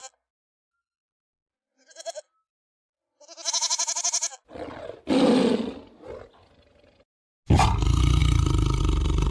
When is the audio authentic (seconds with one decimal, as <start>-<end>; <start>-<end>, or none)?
0.0-9.3